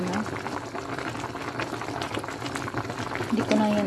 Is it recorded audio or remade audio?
recorded